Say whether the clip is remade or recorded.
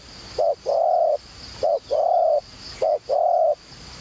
recorded